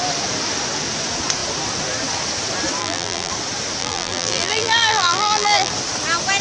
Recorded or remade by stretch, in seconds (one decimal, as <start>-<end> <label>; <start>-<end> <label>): 0.0-2.8 recorded; 2.8-3.3 remade; 3.3-3.8 recorded; 3.8-5.7 remade; 5.7-6.4 recorded